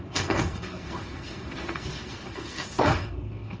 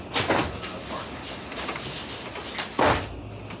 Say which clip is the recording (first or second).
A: second